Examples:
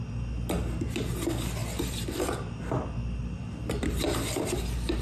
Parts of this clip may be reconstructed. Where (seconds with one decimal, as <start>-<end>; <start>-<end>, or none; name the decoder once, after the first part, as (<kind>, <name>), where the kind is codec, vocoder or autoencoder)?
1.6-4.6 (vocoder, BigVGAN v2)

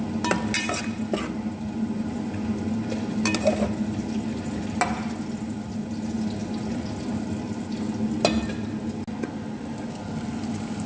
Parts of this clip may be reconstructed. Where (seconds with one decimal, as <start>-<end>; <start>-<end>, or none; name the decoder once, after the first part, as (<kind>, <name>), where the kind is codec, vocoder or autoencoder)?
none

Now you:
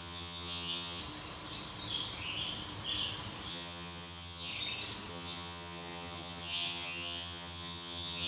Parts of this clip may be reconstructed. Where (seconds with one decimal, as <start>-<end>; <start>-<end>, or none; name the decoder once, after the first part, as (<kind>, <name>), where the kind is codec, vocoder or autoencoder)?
0.0-1.0 (vocoder, HiFi-GAN); 3.5-4.5; 5.1-8.3

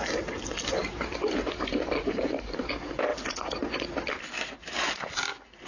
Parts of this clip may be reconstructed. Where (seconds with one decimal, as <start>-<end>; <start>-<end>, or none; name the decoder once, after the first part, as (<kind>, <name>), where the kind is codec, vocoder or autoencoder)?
0.8-2.7 (vocoder, BigVGAN v2)

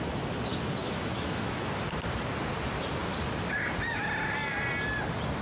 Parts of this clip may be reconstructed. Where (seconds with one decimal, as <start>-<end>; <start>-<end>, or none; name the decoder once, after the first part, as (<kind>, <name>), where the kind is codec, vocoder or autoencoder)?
0.8-1.7 (autoencoder, DAC-VAE)

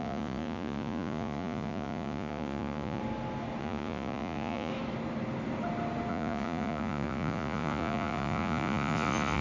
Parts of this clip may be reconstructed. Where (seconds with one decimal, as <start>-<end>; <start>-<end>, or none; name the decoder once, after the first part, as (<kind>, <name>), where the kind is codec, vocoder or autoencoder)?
0.0-3.0 (vocoder, Vocos); 3.6-4.7; 6.1-9.4

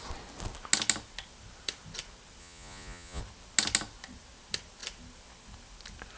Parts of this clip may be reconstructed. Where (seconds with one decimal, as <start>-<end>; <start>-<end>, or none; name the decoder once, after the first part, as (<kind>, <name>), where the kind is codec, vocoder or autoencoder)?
2.4-3.2 (vocoder, Vocos)